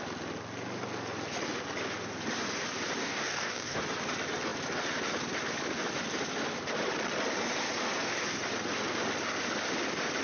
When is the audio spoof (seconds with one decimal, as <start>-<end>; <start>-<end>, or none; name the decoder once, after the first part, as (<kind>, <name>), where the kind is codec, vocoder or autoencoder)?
3.0-3.8 (codec, DAC)

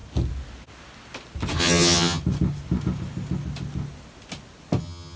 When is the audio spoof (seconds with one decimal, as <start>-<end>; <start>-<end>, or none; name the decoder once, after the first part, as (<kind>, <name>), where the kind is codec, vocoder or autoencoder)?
1.6-2.2 (vocoder, HiFi-GAN); 4.8-5.2

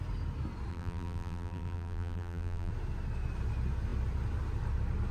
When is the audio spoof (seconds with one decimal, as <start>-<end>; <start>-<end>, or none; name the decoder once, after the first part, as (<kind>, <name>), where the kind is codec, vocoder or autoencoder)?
0.7-2.7 (vocoder, BigVGAN v2)

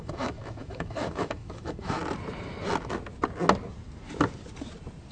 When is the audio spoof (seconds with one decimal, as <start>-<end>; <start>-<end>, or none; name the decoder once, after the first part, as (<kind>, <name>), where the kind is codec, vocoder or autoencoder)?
0.0-2.0 (autoencoder, DAC-VAE)

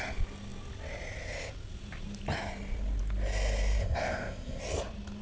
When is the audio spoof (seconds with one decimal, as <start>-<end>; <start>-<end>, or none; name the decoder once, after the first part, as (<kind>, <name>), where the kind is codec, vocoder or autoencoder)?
3.8-4.6 (codec, ZipCodec)

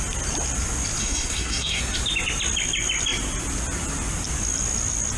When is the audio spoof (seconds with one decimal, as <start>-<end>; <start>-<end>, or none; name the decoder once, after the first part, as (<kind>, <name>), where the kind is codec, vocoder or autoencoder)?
1.0-1.8 (codec, SNAC)

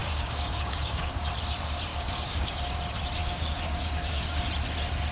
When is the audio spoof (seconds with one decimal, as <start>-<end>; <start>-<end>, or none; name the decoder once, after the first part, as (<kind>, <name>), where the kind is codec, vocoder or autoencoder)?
0.0-1.3 (codec, DAC); 1.9-2.6; 3.2-4.2